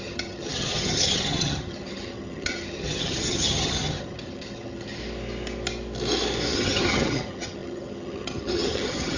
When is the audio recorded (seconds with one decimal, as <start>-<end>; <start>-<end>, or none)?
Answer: 5.0-6.5